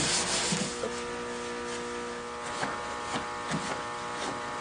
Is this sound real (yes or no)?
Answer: yes